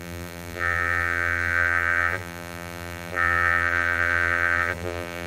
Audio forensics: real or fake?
fake